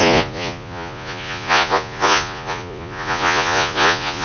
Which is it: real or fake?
fake